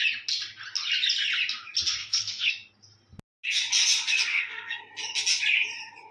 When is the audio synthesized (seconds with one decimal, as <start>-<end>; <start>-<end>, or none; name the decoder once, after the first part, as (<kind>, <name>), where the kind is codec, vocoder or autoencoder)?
2.0-2.5 (codec, SNAC); 4.3-4.8